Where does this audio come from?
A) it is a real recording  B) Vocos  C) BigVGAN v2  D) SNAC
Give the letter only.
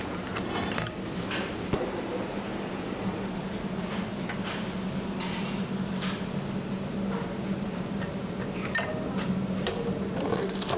A